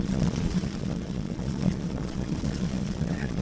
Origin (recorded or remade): remade